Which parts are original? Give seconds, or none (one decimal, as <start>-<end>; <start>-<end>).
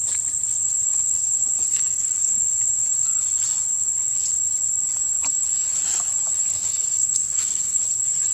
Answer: 0.0-1.7; 2.3-6.5; 7.8-8.3